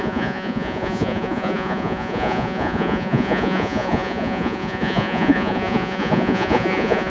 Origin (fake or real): fake